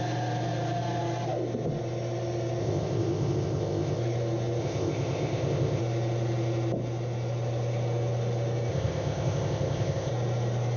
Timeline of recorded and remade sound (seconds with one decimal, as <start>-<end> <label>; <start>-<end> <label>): 0.0-2.6 recorded; 2.6-4.0 remade; 4.0-4.6 recorded; 4.6-5.8 remade; 5.8-8.7 recorded; 8.7-10.1 remade; 10.1-10.8 recorded